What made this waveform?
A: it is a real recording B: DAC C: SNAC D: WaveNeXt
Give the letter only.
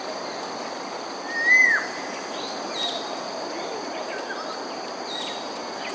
A